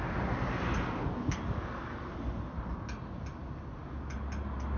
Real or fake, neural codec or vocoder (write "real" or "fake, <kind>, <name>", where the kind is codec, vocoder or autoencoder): real